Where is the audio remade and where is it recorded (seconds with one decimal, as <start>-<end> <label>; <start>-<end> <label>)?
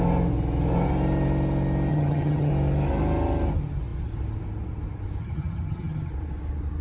0.0-1.9 recorded; 1.9-2.5 remade; 2.5-5.2 recorded; 5.2-6.1 remade; 6.1-6.8 recorded